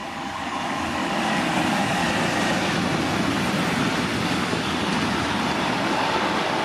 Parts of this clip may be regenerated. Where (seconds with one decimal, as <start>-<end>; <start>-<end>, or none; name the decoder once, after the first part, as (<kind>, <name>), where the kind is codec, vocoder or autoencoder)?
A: 0.0-2.0 (codec, DAC); 4.2-4.9; 5.6-6.6